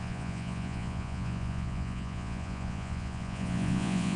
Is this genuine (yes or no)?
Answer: no